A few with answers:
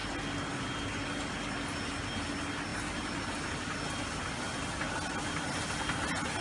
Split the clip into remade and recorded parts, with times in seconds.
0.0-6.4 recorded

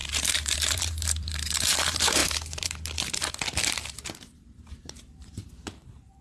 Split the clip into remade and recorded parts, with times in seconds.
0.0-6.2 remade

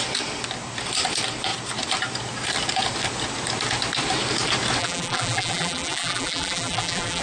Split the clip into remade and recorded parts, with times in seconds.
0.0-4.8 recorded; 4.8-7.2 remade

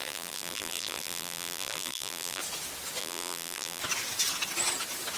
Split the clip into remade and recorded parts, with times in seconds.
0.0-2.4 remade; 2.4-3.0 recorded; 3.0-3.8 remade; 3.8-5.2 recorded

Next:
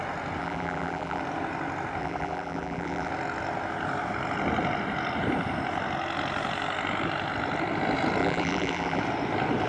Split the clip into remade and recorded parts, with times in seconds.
0.0-0.4 recorded; 0.4-1.2 remade; 1.2-2.0 recorded; 2.0-3.1 remade; 3.1-8.2 recorded; 8.2-9.0 remade; 9.0-9.7 recorded

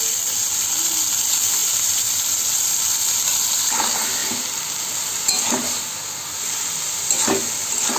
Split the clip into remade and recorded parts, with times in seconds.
0.0-4.2 remade; 4.2-8.0 recorded

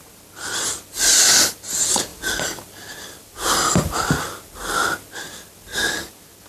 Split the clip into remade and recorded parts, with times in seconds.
0.0-2.1 recorded; 2.1-3.8 remade; 3.8-6.5 recorded

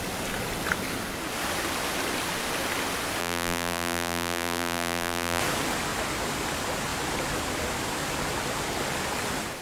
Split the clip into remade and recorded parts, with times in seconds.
0.0-3.2 recorded; 3.2-5.4 remade; 5.4-9.6 recorded